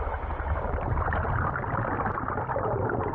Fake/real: real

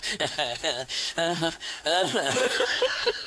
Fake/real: fake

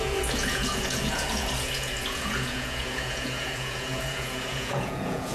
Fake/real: fake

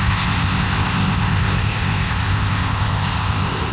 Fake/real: fake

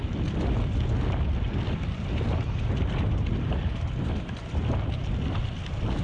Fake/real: real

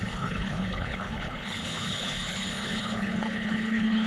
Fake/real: fake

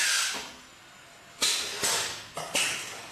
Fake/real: real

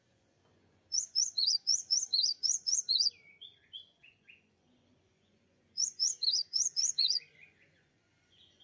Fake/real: fake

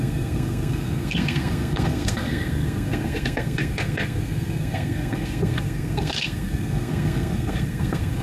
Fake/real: fake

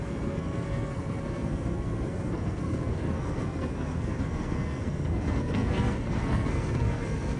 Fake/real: fake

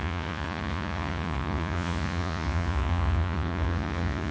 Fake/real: fake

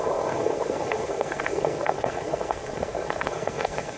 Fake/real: fake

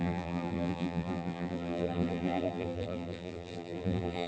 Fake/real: fake